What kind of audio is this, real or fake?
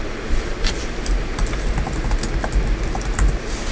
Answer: real